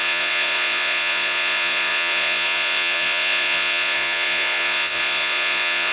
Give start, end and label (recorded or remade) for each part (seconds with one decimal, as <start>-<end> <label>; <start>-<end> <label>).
0.0-5.9 remade